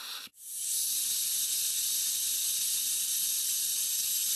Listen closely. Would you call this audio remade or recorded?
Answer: recorded